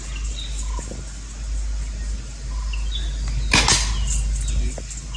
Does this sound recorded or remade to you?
recorded